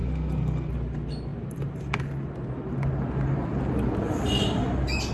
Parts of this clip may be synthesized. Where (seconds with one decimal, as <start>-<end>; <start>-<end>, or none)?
0.0-0.7